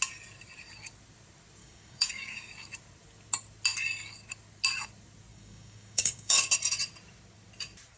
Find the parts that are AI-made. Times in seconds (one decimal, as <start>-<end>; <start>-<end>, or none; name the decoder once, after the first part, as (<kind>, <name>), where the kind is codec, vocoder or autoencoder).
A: 1.6-2.5 (codec, DAC); 5.3-6.5